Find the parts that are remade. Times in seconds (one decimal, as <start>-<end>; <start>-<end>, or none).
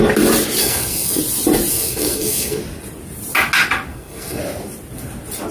0.6-1.2; 1.7-2.6; 3.9-4.4